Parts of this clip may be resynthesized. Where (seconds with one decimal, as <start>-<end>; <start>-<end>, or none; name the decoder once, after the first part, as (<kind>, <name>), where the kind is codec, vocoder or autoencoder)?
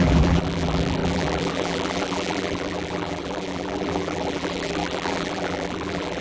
0.0-6.2 (vocoder, BigVGAN v2)